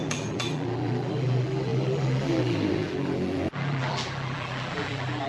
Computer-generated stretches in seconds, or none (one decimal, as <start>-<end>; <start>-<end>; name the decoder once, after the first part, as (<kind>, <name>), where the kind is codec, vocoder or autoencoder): 0.0-5.3 (vocoder, BigVGAN v2)